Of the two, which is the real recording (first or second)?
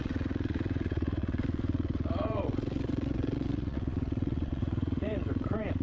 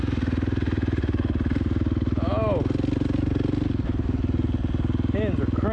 second